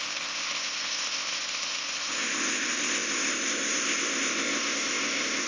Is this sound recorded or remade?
remade